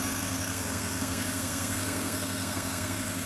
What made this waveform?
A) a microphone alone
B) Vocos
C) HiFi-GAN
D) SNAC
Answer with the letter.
D